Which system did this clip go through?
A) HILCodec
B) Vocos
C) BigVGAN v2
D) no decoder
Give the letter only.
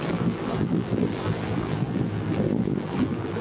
C